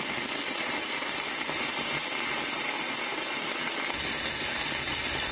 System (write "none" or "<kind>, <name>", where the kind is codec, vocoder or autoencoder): none